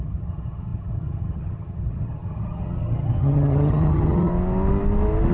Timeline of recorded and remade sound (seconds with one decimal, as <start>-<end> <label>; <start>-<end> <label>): 0.0-4.3 remade; 4.3-5.3 recorded